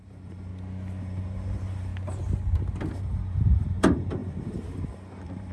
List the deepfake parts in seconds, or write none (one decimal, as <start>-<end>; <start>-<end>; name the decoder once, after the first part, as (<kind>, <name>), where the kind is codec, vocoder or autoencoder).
0.0-0.5 (vocoder, BigVGAN v2); 1.0-1.9; 2.9-5.5

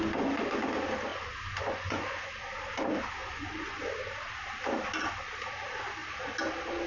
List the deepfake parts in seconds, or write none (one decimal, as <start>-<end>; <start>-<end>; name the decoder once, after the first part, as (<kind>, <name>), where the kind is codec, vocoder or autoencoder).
1.1-2.3 (vocoder, Vocos); 3.2-3.8